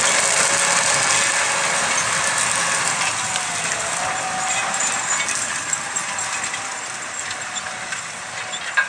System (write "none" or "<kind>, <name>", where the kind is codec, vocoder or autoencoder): none